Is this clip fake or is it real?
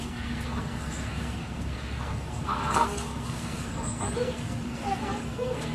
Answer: fake